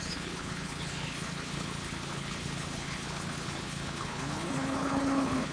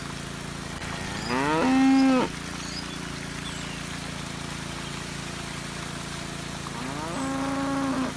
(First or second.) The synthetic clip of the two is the first